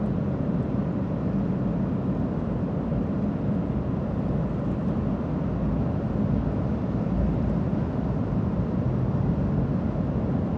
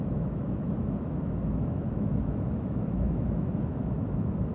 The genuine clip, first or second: first